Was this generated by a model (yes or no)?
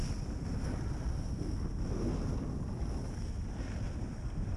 no